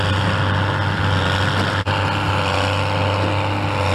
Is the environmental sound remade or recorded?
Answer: recorded